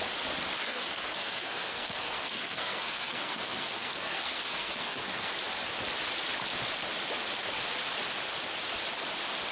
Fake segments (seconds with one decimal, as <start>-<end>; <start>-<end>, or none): 0.7-5.3